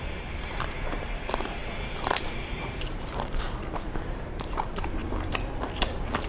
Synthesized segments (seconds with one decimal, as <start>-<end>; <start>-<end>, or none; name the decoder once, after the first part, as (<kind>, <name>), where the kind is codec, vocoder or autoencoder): 0.0-5.0 (vocoder, BigVGAN v2); 5.5-6.3